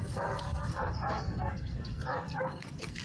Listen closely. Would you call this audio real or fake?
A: fake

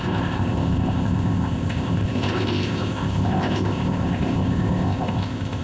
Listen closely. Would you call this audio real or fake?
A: fake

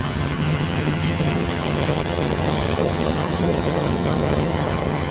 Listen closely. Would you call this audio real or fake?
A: fake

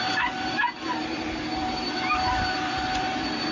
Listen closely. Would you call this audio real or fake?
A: fake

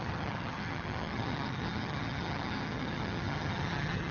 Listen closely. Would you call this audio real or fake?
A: fake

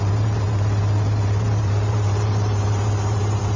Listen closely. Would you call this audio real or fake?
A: fake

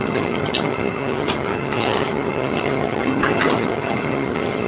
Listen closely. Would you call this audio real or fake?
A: fake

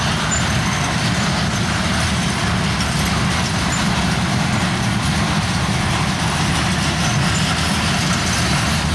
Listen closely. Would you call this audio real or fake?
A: real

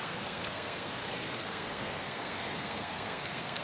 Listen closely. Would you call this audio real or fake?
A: fake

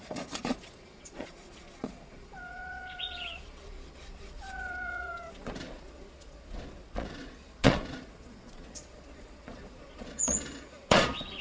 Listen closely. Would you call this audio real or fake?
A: fake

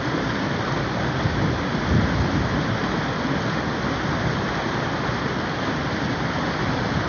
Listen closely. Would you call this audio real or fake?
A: real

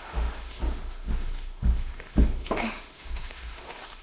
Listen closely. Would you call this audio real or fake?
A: fake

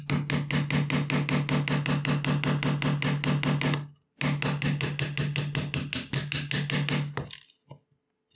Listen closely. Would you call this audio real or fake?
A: real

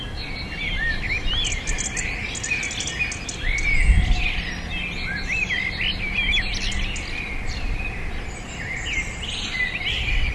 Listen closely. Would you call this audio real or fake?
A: real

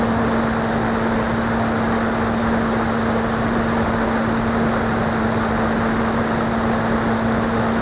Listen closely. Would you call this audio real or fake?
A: real